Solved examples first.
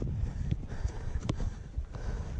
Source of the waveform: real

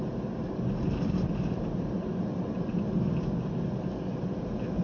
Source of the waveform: real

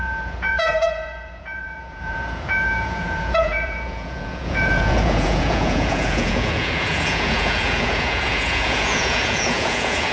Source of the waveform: fake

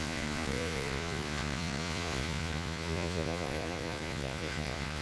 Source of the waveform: fake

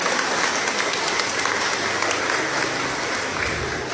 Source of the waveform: real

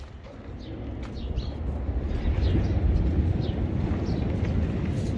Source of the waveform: real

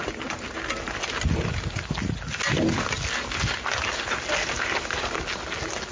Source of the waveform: real